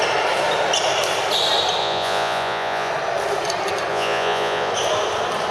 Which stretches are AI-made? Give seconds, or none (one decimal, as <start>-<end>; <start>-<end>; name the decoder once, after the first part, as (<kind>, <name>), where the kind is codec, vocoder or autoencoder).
1.8-2.9 (vocoder, Vocos); 3.9-4.7